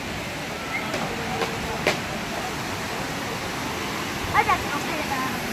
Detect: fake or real real